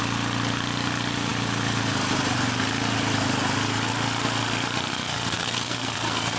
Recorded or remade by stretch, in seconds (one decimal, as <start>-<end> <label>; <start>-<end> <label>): 0.0-4.9 recorded; 4.9-6.4 remade